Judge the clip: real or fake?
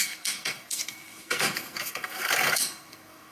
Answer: fake